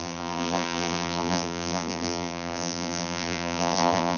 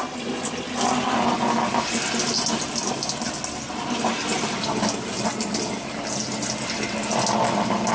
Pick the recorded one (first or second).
second